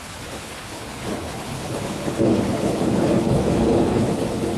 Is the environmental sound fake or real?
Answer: fake